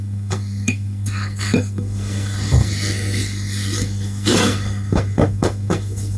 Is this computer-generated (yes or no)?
yes